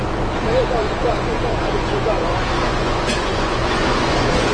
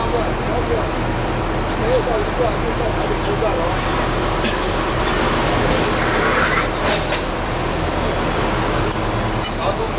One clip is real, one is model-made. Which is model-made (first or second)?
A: first